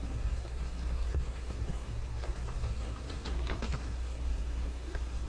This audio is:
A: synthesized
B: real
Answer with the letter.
A